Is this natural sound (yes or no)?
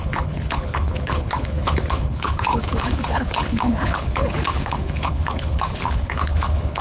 no